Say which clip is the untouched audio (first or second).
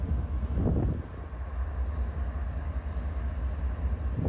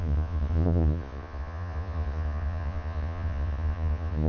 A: first